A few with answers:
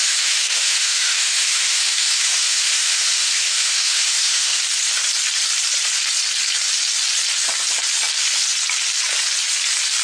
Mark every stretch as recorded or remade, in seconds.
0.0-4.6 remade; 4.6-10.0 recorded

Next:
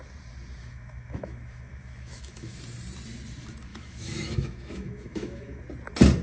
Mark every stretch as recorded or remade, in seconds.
0.0-0.6 recorded; 0.6-2.6 remade; 2.6-3.7 recorded; 3.7-5.6 remade; 5.6-6.2 recorded

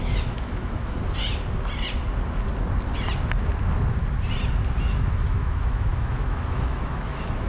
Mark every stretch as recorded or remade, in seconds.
0.0-1.0 remade; 1.0-4.8 recorded; 4.8-7.5 remade

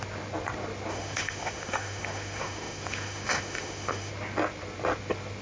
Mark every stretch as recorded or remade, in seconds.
0.0-0.9 recorded; 0.9-4.1 remade; 4.1-5.4 recorded

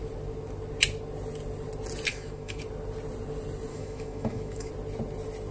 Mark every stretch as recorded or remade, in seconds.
0.0-2.1 recorded; 2.1-2.6 remade; 2.6-3.7 recorded; 3.7-4.7 remade; 4.7-5.5 recorded

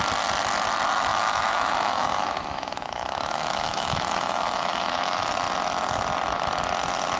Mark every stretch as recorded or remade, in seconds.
0.0-1.1 recorded; 1.1-5.3 remade; 5.3-7.2 recorded